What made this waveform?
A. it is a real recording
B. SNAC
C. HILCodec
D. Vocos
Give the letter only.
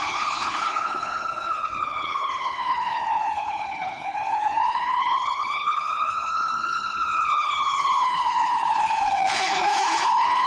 C